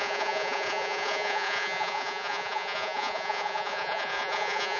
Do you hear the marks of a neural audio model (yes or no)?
yes